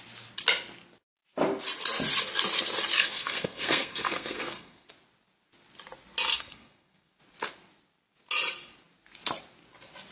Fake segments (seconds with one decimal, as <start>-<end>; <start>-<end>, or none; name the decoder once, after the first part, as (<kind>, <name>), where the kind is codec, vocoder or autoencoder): 3.0-4.9 (codec, SNAC); 6.3-7.2